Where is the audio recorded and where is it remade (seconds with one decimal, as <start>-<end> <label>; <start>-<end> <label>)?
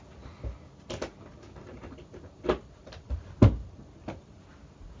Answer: 0.0-5.0 recorded